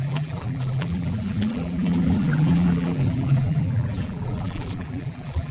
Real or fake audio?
fake